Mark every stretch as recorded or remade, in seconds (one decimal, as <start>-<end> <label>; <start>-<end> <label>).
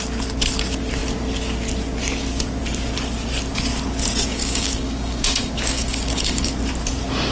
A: 0.0-4.3 recorded; 4.3-6.5 remade; 6.5-7.3 recorded